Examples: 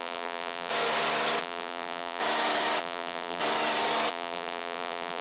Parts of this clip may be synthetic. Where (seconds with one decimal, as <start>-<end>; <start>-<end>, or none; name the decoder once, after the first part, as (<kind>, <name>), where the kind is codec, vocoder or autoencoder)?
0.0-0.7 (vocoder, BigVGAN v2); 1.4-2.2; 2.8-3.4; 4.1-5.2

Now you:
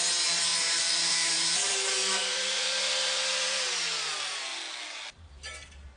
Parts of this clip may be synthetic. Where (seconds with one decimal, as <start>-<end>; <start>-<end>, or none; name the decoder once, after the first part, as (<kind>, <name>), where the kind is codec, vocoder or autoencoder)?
0.5-4.1 (vocoder, BigVGAN v2)

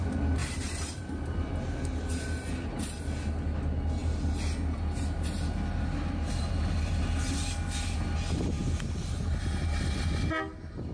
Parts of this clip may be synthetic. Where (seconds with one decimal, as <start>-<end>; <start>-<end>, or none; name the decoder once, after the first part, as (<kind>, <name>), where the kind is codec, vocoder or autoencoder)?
0.4-1.5 (vocoder, BigVGAN v2)

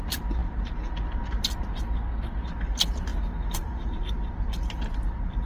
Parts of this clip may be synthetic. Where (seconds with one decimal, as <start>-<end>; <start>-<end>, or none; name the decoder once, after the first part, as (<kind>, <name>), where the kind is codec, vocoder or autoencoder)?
none